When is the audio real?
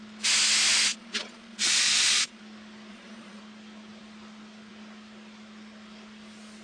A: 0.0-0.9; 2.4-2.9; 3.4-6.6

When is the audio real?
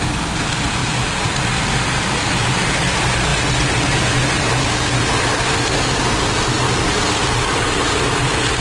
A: 0.0-0.8; 1.4-8.6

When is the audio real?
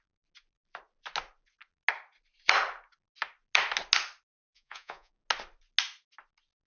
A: 0.0-4.5; 5.1-6.7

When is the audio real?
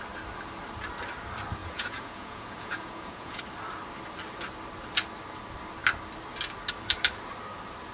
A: 0.0-1.6; 3.4-7.9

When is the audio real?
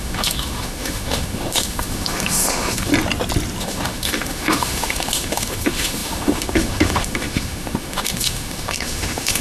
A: 2.9-3.6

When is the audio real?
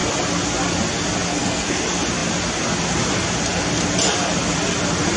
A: 0.0-1.3; 1.8-5.2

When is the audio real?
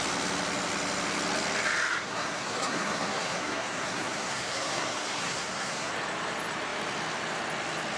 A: 0.0-2.0; 5.9-8.0